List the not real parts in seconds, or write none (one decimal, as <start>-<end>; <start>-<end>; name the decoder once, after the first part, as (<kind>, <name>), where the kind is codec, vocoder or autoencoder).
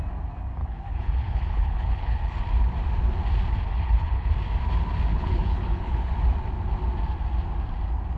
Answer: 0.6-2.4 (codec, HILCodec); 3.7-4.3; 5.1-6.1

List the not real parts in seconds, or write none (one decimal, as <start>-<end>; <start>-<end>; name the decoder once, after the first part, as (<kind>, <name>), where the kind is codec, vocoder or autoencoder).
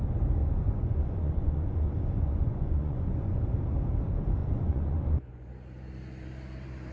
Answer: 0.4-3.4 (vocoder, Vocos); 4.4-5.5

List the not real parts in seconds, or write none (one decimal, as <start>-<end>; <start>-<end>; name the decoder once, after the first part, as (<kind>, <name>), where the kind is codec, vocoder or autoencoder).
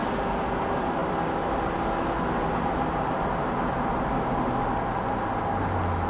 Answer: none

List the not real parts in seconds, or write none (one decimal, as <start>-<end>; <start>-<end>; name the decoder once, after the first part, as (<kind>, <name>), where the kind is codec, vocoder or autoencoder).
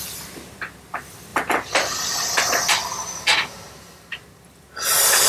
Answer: none